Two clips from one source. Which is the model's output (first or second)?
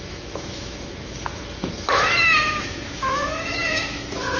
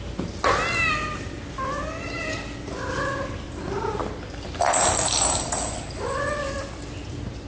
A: first